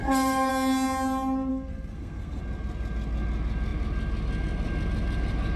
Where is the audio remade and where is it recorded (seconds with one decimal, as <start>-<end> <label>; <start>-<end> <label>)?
0.0-0.5 remade; 0.5-1.5 recorded; 1.5-2.4 remade; 2.4-5.6 recorded